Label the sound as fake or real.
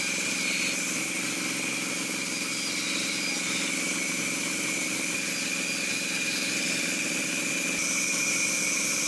real